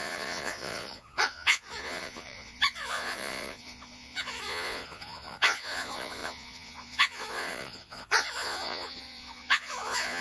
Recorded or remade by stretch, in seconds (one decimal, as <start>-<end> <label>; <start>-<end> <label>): 0.0-10.2 remade